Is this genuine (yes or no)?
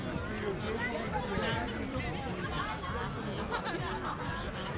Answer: yes